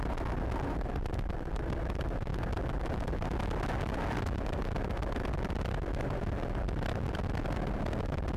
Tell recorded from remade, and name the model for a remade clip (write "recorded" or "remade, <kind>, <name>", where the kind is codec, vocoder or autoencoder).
recorded